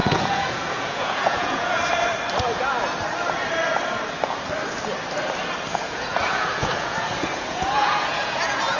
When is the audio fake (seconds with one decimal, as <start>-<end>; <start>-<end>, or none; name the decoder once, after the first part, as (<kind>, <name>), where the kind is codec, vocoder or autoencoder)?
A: 0.0-1.8 (vocoder, Vocos); 5.7-8.8